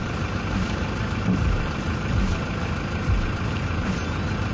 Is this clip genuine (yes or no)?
yes